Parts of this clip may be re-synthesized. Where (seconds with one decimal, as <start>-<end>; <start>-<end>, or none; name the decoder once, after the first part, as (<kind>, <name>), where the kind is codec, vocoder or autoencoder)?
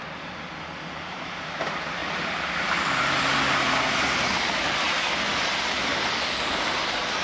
none